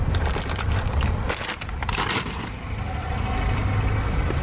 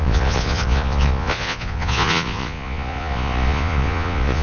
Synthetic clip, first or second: second